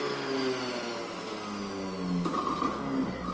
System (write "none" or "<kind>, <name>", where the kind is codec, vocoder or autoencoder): none